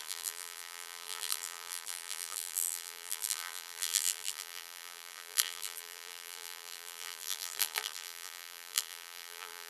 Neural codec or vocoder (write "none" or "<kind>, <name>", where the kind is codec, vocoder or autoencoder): vocoder, BigVGAN v2